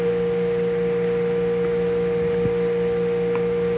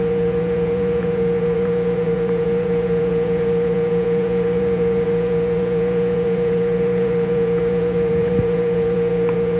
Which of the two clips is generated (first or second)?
second